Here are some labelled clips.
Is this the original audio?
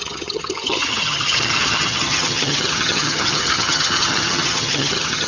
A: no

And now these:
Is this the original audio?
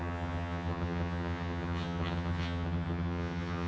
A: no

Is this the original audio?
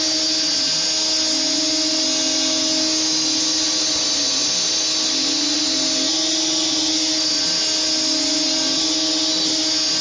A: yes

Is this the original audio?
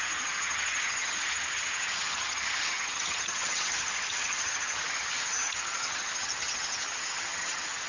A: no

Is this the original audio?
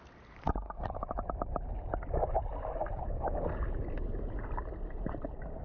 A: yes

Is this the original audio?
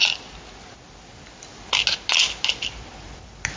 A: yes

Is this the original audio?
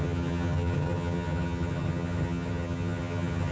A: no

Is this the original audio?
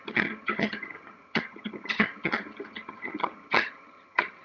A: no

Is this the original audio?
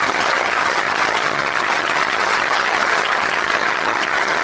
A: no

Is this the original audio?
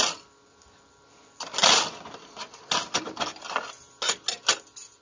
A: yes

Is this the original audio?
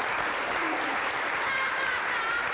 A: yes